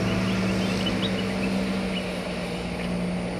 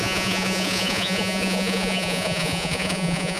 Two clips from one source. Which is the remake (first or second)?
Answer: second